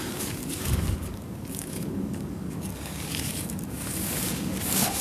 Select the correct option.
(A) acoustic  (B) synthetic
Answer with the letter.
B